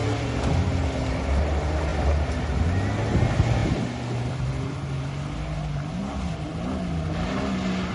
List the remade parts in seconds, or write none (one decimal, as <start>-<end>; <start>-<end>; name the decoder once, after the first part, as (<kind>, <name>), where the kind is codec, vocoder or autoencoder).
6.0-6.5 (vocoder, BigVGAN v2)